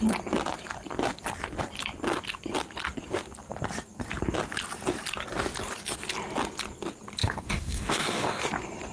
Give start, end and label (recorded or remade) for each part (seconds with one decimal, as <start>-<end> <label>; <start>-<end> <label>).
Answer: 0.0-7.2 recorded; 7.2-8.4 remade; 8.4-8.9 recorded